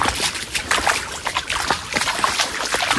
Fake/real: real